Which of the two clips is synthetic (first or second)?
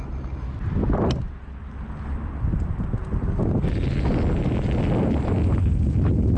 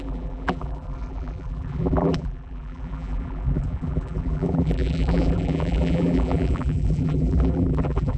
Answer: second